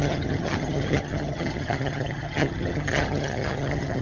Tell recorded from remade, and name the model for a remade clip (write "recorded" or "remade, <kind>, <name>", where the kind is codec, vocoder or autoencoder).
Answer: remade, vocoder, HiFi-GAN